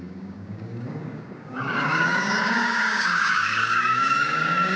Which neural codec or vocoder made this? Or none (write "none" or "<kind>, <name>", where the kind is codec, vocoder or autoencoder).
codec, DAC